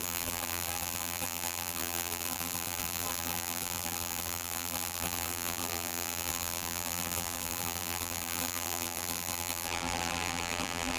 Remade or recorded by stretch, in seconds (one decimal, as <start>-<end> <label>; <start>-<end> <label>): 0.0-11.0 remade